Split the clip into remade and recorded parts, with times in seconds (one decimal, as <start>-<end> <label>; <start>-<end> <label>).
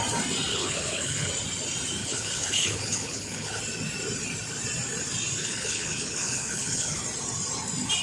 0.0-0.5 recorded; 0.5-1.3 remade; 1.3-2.0 recorded; 2.0-3.6 remade; 3.6-5.4 recorded; 5.4-7.0 remade; 7.0-8.0 recorded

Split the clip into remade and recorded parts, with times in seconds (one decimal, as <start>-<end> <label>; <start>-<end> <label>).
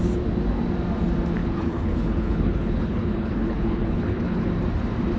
0.0-1.4 recorded; 1.4-4.5 remade; 4.5-5.2 recorded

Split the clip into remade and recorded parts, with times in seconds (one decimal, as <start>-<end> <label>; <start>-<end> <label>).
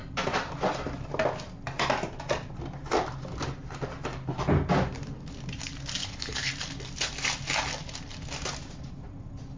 0.0-6.0 recorded; 6.0-6.5 remade; 6.5-9.6 recorded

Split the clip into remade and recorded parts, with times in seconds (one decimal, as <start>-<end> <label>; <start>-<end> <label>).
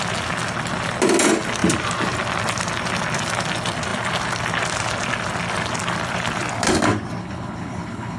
0.0-7.2 recorded; 7.2-8.2 remade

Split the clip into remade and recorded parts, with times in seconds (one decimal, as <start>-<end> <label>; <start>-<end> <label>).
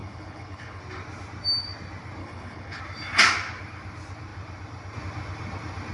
0.0-0.8 remade; 0.8-2.2 recorded; 2.2-2.8 remade; 2.8-5.9 recorded